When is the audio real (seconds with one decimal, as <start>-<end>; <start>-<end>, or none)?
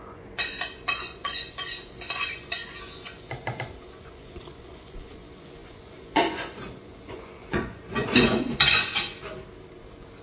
9.1-10.2